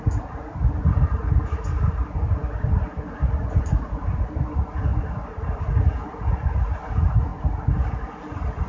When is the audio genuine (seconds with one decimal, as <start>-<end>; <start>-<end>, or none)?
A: 0.0-0.6; 1.2-7.3; 7.9-8.7